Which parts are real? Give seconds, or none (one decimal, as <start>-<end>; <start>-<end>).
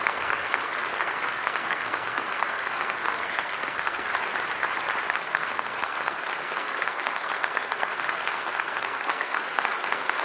4.1-5.1